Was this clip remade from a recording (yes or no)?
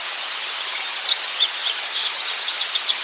yes